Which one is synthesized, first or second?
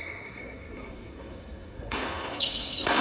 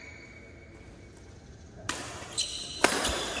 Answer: first